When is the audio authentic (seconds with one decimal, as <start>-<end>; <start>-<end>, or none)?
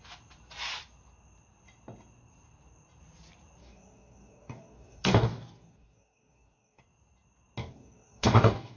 0.0-3.6; 6.8-7.6